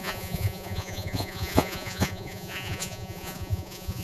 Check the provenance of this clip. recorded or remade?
remade